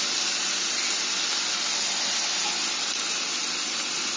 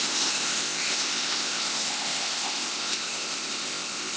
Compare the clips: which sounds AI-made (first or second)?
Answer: second